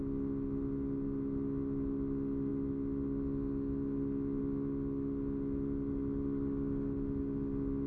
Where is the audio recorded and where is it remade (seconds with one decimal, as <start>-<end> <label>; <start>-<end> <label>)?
0.0-7.9 recorded